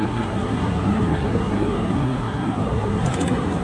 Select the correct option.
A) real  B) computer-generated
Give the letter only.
B